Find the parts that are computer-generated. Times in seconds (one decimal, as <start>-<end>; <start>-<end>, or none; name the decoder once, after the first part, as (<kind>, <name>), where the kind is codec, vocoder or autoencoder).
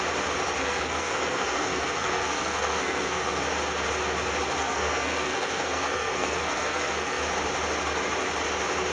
0.6-3.4 (codec, SNAC); 4.6-7.2